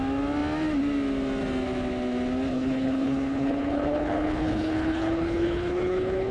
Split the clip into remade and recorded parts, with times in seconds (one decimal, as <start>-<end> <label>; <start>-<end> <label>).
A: 0.0-2.5 recorded; 2.5-6.3 remade